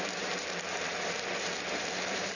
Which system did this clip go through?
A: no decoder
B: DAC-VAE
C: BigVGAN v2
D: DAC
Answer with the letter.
C